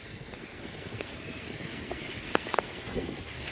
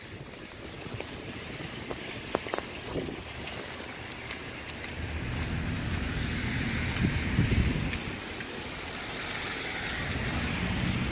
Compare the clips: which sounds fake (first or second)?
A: first